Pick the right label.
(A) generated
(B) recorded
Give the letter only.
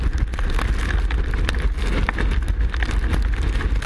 B